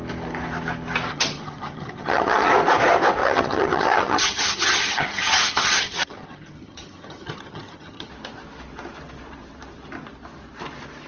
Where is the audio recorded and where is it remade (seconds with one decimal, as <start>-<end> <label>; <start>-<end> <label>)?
0.0-1.1 recorded; 1.1-2.5 remade; 2.5-3.2 recorded; 3.2-8.1 remade; 8.1-11.1 recorded